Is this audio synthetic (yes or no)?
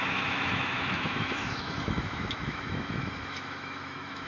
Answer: yes